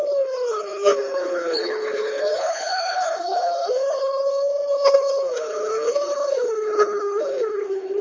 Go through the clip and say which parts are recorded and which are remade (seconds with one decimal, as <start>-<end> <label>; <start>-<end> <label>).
0.0-8.0 remade